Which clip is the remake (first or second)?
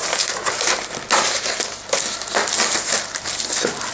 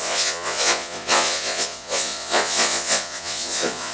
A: second